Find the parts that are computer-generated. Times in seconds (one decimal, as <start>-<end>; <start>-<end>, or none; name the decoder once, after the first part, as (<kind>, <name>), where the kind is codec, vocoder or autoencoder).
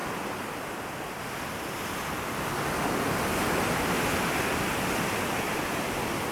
none